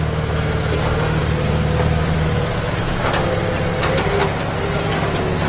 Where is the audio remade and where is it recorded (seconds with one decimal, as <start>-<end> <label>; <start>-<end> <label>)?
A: 0.0-1.2 recorded; 1.2-3.0 remade; 3.0-5.5 recorded